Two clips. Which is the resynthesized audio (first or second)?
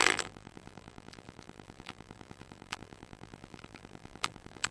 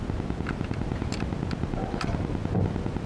first